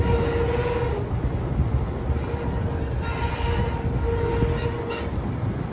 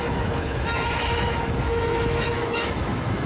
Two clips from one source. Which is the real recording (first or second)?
first